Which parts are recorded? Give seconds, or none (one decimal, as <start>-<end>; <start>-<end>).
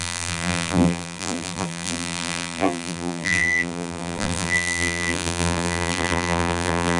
none